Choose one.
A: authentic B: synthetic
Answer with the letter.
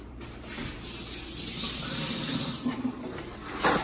A